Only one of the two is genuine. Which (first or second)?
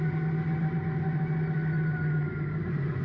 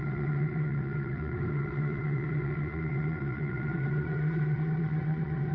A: first